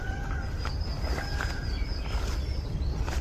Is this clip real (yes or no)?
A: yes